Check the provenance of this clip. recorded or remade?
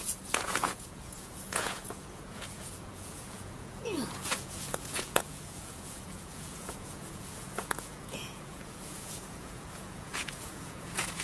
remade